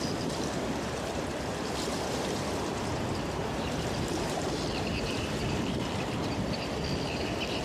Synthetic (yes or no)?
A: yes